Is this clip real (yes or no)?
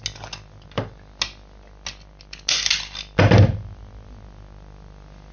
yes